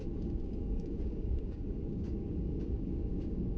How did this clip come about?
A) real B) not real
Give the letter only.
B